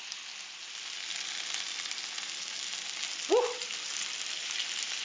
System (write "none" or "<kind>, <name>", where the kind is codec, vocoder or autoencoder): none